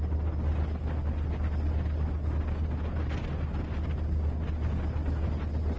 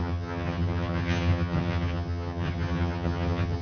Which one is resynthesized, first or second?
second